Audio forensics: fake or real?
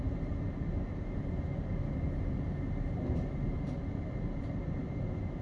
real